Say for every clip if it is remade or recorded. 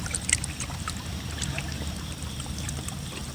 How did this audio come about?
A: remade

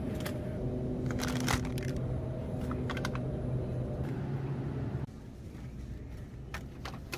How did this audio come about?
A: recorded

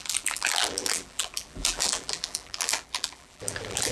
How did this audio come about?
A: remade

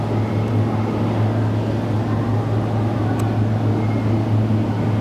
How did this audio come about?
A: recorded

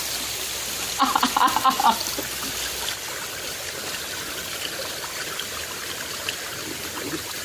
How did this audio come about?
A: recorded